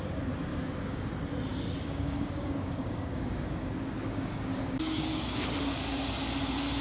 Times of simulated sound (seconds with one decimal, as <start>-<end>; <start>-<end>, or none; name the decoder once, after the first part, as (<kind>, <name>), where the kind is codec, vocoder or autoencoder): 0.5-1.1 (codec, DAC); 1.5-5.6